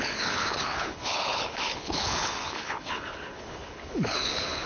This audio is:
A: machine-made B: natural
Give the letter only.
A